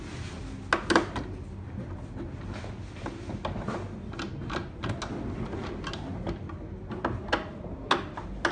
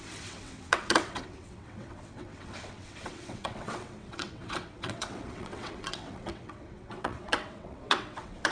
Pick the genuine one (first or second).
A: first